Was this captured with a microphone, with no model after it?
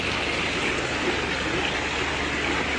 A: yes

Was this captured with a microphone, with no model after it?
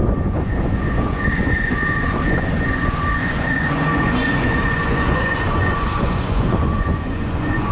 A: no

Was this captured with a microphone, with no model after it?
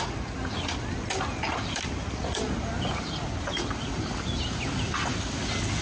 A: yes